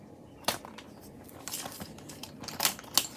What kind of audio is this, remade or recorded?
recorded